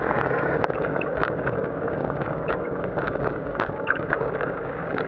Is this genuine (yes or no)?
no